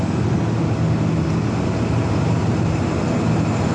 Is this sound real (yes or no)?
yes